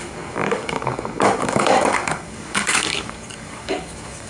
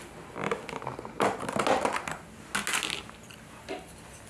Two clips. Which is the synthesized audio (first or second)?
first